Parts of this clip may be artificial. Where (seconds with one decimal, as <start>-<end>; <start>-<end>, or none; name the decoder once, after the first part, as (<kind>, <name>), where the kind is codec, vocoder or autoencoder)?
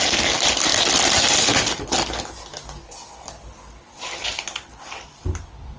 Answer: none